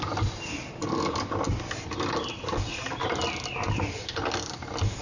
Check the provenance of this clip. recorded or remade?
recorded